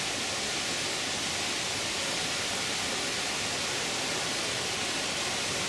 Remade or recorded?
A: recorded